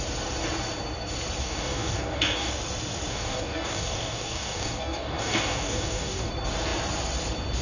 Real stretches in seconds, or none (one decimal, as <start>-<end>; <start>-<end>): 0.0-1.4; 2.5-3.1; 6.3-7.6